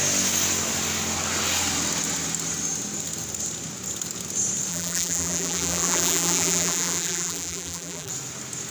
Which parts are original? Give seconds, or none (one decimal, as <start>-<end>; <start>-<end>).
0.0-4.7; 8.1-8.7